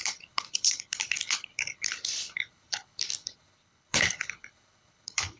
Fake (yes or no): yes